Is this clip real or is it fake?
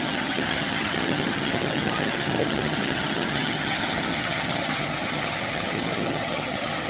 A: fake